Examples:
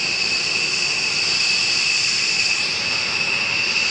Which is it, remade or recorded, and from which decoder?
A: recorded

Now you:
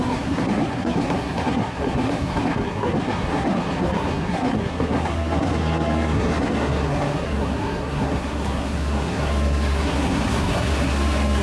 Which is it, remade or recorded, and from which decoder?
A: remade, codec, SNAC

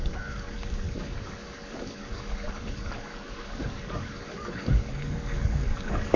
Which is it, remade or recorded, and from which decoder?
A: remade, codec, DAC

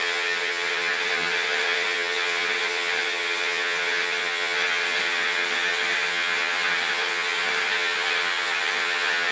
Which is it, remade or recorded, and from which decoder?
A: remade, vocoder, HiFi-GAN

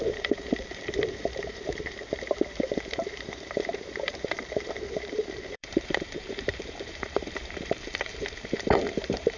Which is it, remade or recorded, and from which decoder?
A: remade, vocoder, BigVGAN v2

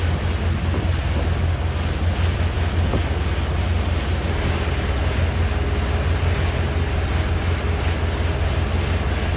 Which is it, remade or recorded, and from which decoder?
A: recorded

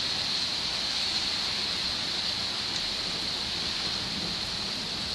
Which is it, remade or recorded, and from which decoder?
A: recorded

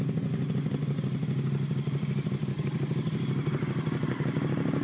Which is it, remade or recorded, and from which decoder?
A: recorded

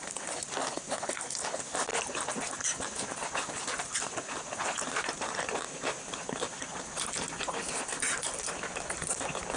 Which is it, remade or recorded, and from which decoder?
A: recorded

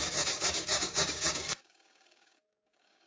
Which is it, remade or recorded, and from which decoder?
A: remade, codec, DAC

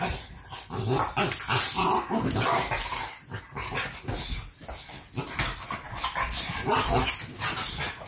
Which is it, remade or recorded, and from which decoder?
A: recorded